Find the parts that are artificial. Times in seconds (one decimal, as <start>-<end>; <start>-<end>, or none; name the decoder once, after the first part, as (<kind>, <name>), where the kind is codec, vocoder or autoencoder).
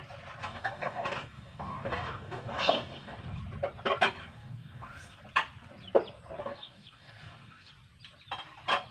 0.4-3.4 (codec, DAC); 4.2-5.2; 6.4-7.7